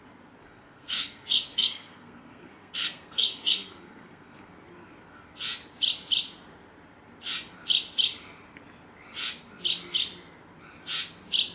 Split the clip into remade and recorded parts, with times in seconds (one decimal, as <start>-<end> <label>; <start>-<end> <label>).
0.0-0.4 recorded; 0.4-4.5 remade; 4.5-11.5 recorded